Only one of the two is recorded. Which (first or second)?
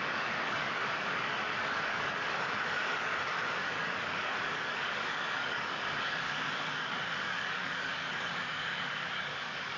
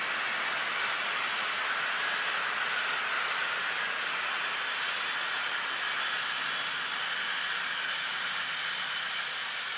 second